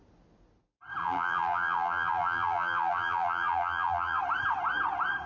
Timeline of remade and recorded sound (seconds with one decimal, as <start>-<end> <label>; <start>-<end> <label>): 0.0-1.0 recorded; 1.0-4.2 remade; 4.2-5.3 recorded